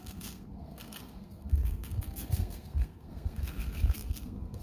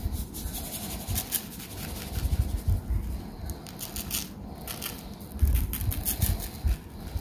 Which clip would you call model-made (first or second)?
first